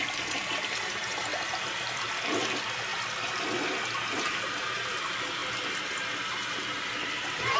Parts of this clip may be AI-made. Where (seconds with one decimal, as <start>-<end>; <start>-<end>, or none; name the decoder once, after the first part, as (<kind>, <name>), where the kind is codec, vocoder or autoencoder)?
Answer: 0.0-2.9 (vocoder, BigVGAN v2); 4.1-5.4; 6.5-7.6

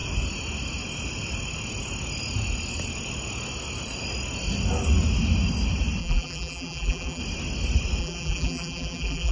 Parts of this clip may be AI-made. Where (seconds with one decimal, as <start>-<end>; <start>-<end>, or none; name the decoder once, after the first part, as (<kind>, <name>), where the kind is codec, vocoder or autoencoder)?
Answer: 6.0-7.2 (vocoder, BigVGAN v2); 8.0-9.3

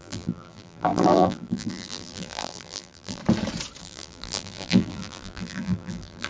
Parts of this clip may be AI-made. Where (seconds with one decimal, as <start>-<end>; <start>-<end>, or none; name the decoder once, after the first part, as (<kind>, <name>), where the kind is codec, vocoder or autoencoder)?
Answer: 0.0-3.2 (vocoder, BigVGAN v2); 3.8-6.3

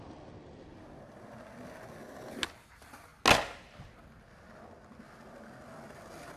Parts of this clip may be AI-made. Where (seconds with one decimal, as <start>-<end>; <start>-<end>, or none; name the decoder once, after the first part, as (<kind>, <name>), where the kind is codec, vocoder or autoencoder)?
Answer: none

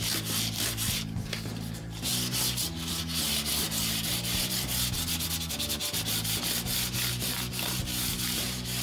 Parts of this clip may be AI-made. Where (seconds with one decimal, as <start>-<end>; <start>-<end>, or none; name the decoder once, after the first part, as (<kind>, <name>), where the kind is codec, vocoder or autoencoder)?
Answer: 0.0-2.1 (vocoder, BigVGAN v2); 7.1-8.8

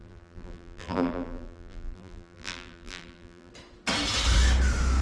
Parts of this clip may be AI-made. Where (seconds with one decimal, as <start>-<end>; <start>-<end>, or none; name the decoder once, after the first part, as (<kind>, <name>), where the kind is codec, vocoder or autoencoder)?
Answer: 0.0-3.5 (vocoder, BigVGAN v2)